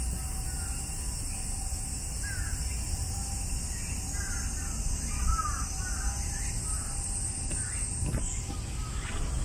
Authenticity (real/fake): real